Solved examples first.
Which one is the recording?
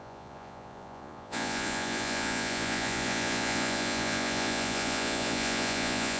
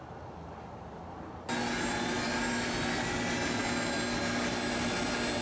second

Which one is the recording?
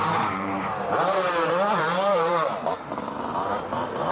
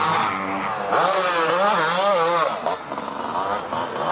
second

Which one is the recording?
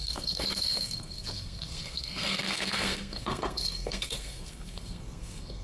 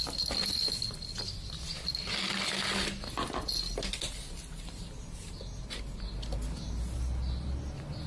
second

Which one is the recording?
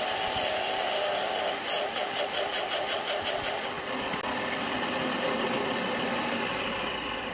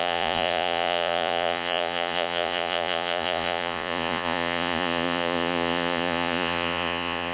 first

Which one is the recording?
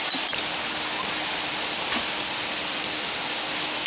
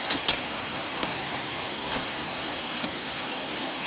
first